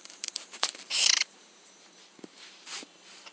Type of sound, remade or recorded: remade